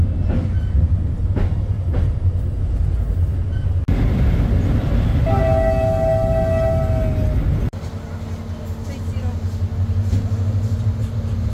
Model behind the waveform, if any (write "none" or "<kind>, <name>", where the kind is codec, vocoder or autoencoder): none